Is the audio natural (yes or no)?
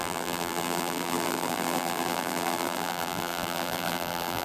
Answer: no